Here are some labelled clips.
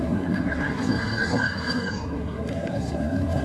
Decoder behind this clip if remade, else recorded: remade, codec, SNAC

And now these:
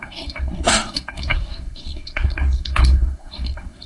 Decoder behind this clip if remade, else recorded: remade, codec, SNAC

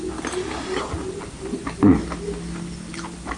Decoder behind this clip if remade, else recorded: recorded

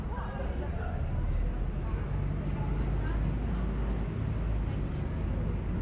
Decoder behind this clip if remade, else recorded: recorded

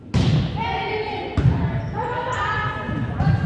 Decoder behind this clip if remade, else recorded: recorded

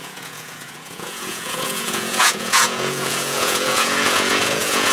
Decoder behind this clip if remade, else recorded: remade, vocoder, Vocos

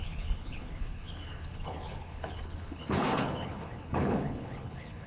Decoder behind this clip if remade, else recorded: remade, codec, HILCodec